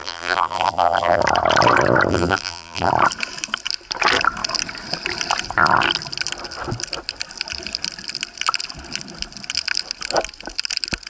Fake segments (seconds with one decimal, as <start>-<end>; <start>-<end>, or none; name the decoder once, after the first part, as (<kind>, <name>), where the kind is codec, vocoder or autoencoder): 0.0-1.2 (vocoder, BigVGAN v2); 2.1-2.9